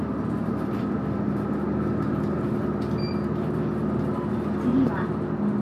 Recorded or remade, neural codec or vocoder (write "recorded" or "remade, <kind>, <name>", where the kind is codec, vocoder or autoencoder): recorded